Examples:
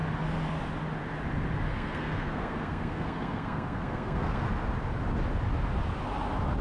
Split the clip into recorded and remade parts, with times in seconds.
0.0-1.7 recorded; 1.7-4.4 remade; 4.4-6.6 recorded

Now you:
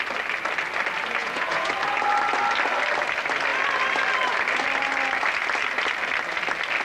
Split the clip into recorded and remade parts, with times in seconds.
0.0-1.2 recorded; 1.2-1.7 remade; 1.7-6.8 recorded